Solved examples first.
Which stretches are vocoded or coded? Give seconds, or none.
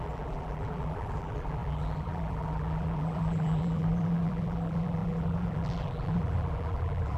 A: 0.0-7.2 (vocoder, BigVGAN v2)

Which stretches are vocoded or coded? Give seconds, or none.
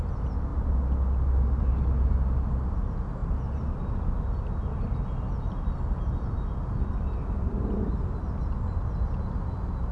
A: none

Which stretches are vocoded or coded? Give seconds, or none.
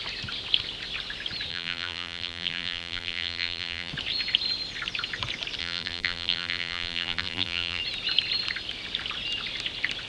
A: 1.5-3.9 (vocoder, BigVGAN v2); 5.6-7.8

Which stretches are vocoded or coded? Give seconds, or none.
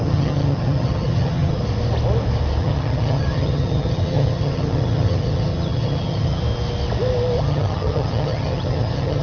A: 0.0-1.6 (vocoder, HiFi-GAN); 2.6-6.4; 7.4-9.2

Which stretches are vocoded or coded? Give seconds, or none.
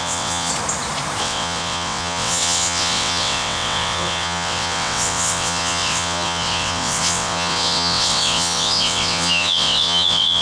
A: 0.0-0.5 (vocoder, WaveNeXt); 1.2-10.4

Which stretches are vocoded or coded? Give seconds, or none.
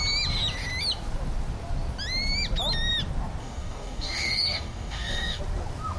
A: 3.4-5.4 (codec, DAC)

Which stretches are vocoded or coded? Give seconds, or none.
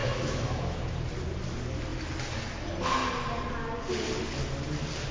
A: 0.0-0.9 (autoencoder, DAC-VAE)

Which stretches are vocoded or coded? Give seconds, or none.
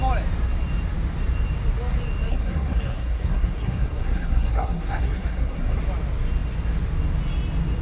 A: 2.3-5.8 (codec, SNAC)